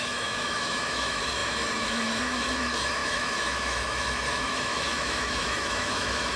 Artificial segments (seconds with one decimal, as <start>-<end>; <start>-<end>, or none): 0.0-6.4